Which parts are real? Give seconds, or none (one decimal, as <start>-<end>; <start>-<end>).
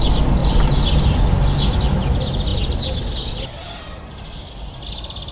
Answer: 0.0-0.4; 1.2-2.5; 4.5-5.3